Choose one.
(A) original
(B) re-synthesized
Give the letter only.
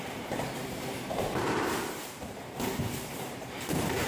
B